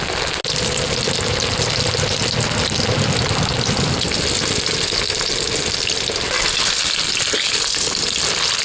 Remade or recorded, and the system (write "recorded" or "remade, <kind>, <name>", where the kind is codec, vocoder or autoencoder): recorded